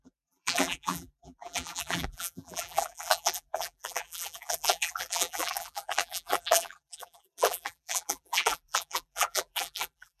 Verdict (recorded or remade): remade